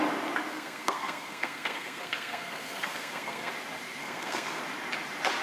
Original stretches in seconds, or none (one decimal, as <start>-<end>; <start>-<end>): 0.0-0.5; 3.5-4.0; 4.6-5.4

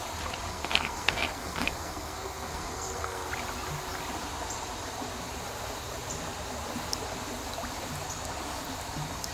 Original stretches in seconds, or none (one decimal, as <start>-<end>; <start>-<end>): 0.0-0.5; 3.3-9.3

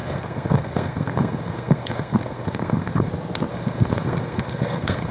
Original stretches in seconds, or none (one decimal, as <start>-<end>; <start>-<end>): 3.1-3.5

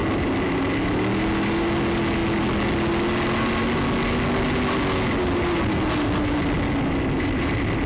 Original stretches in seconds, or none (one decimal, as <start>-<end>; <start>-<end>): 0.0-7.9

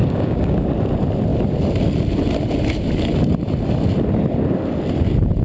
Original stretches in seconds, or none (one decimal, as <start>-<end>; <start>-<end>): 0.7-5.4